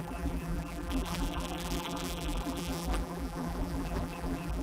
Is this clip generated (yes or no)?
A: yes